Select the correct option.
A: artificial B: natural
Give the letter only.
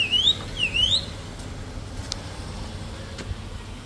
B